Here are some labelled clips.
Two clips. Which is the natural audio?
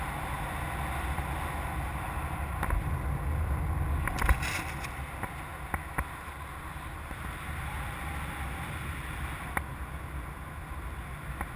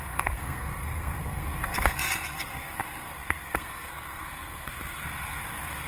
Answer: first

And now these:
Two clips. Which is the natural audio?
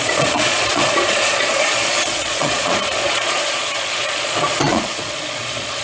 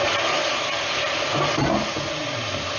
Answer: second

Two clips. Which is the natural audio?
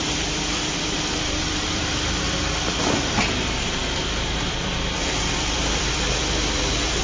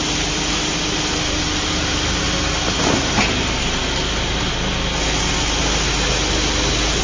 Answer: second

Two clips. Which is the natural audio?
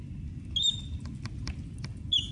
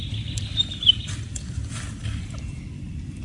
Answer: first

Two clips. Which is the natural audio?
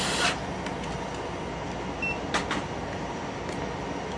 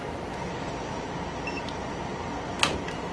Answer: first